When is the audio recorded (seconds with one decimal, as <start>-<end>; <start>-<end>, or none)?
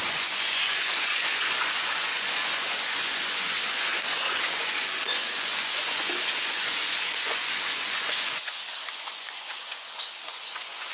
none